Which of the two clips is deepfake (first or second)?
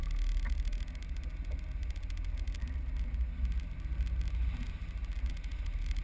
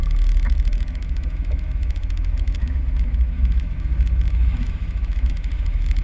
second